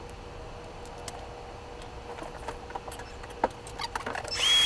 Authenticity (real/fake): real